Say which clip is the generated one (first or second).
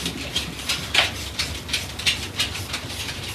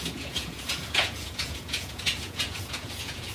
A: second